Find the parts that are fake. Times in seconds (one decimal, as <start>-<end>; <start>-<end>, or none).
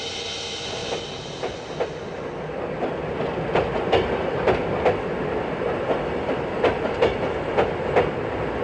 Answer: none